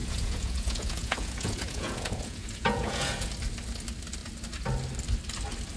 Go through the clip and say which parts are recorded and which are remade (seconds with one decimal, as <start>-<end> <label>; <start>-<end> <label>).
0.0-3.3 remade; 3.3-5.8 recorded